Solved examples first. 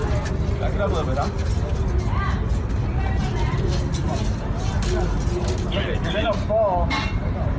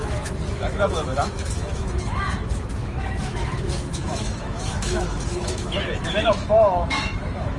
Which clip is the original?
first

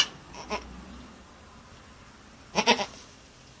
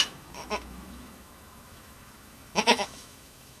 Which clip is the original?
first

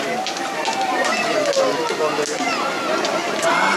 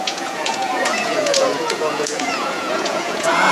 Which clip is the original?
first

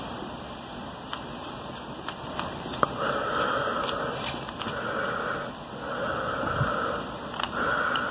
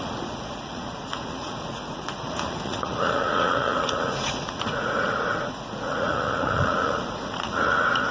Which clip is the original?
first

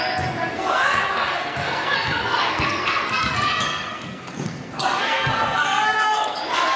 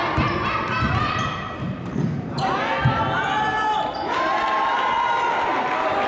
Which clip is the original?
second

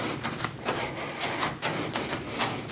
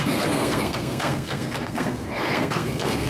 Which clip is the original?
first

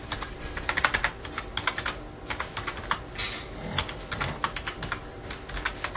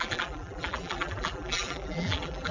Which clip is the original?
first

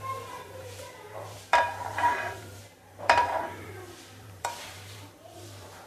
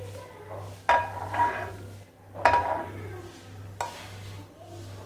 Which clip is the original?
second